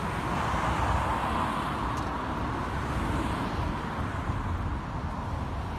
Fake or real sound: real